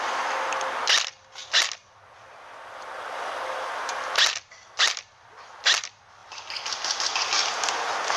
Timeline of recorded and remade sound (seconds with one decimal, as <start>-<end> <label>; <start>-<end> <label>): 0.0-8.2 recorded